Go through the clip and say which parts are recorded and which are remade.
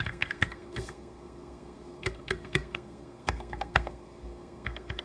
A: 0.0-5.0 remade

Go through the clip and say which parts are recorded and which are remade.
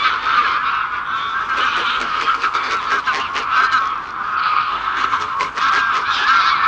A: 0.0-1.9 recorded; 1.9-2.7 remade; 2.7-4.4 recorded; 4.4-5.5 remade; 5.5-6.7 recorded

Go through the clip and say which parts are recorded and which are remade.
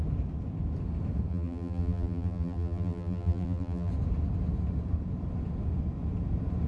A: 0.0-1.3 recorded; 1.3-3.9 remade; 3.9-6.7 recorded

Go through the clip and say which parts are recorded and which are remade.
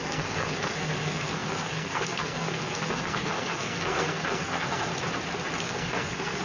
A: 0.0-4.9 remade; 4.9-5.6 recorded; 5.6-6.4 remade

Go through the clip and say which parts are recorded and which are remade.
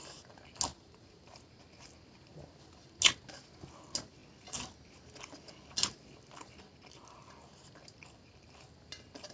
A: 0.0-0.7 recorded; 0.7-1.6 remade; 1.6-9.3 recorded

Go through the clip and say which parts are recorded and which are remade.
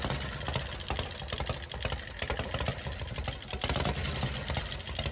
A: 0.0-5.1 recorded